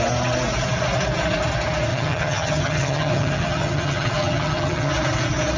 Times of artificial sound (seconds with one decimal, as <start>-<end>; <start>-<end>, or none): 1.9-4.9